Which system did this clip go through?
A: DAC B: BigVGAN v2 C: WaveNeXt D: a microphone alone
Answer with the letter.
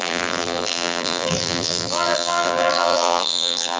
B